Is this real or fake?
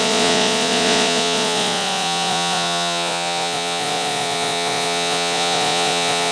fake